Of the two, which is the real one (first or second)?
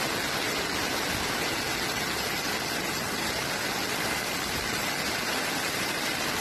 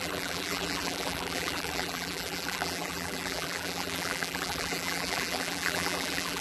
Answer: first